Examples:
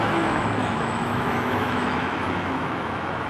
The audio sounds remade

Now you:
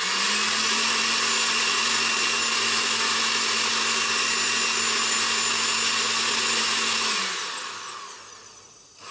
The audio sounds recorded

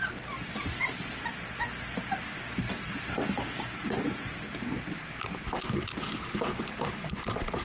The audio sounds recorded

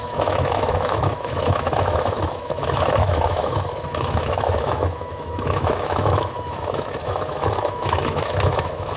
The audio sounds remade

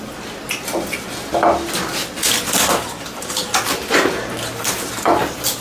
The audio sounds recorded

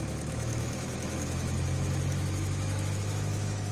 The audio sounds remade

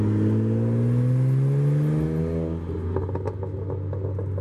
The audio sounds recorded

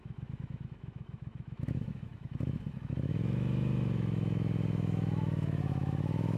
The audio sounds remade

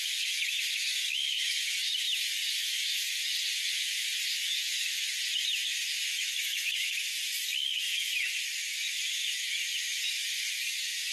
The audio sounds remade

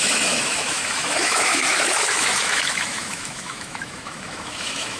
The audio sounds remade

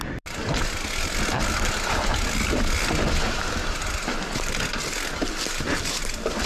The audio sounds recorded